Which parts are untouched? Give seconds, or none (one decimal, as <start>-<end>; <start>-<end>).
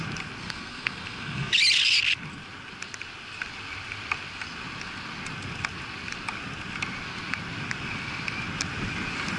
0.0-0.4; 1.5-9.4